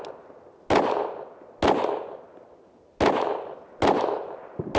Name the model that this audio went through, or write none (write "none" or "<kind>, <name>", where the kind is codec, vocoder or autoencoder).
none